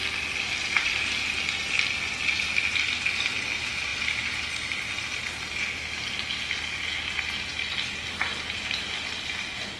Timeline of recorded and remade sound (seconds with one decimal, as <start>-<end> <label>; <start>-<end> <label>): 0.0-9.8 recorded